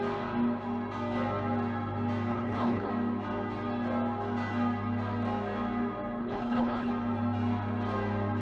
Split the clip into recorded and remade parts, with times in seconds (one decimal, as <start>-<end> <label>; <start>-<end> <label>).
0.0-2.3 recorded; 2.3-2.9 remade; 2.9-6.2 recorded; 6.2-6.9 remade; 6.9-8.4 recorded